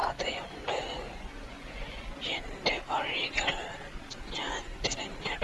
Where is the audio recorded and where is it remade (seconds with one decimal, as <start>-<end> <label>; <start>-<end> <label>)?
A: 0.0-2.1 remade; 2.1-5.4 recorded